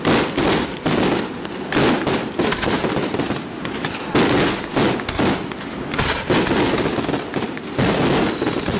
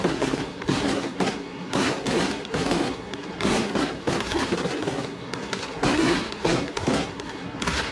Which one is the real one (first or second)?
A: first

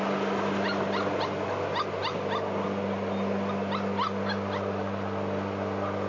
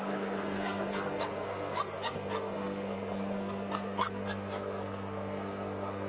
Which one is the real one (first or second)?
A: first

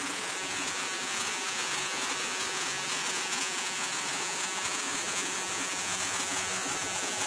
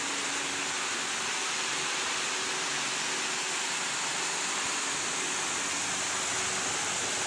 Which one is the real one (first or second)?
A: second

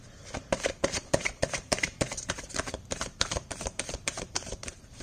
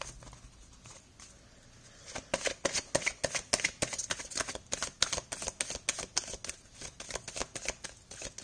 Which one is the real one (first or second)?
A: second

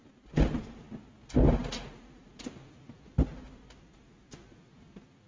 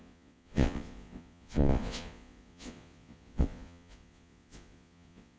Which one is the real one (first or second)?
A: first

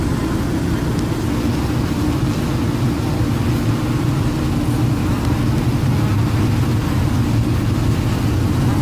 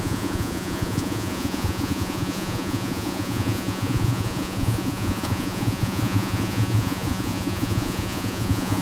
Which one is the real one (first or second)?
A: first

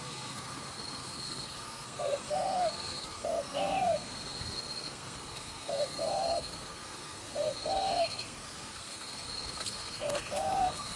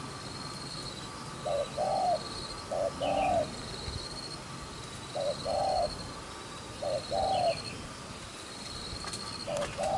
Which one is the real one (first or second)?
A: second